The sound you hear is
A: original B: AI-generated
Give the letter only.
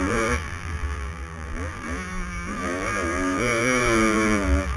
B